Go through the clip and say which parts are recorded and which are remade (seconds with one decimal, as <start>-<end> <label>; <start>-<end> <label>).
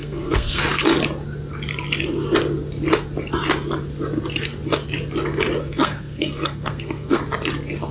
0.0-0.6 remade; 0.6-5.6 recorded; 5.6-7.2 remade; 7.2-7.9 recorded